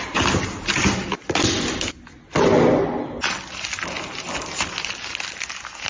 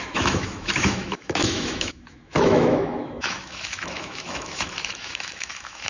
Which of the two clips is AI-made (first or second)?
second